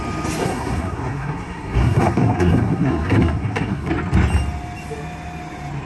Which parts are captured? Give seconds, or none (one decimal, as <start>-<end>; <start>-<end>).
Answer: 0.0-0.4; 3.9-5.9